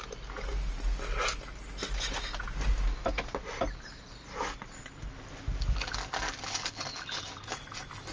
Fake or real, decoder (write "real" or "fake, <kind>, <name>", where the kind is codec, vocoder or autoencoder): real